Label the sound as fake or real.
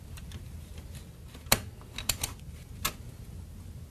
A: real